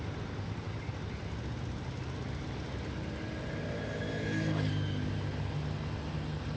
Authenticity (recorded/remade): recorded